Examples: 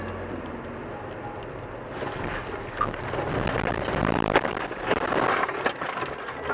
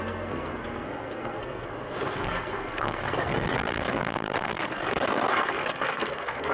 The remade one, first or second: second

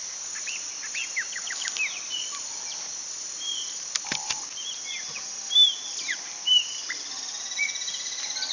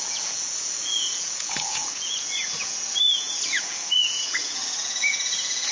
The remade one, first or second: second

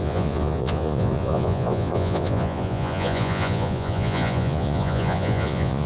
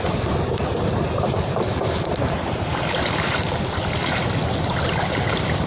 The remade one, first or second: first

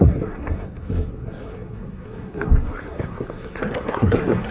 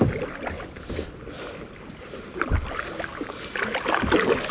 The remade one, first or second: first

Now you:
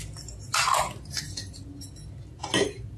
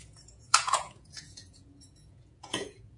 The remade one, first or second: second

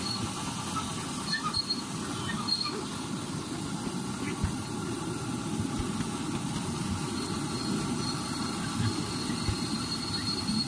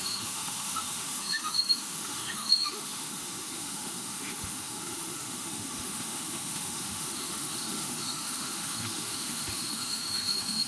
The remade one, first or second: second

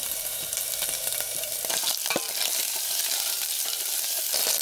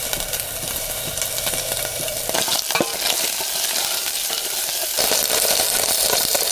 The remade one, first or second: first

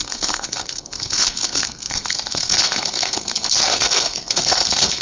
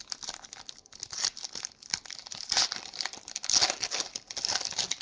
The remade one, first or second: first